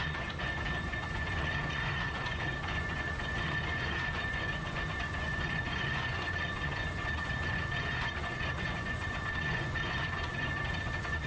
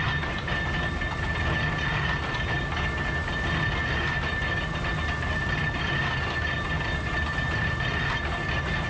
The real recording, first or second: second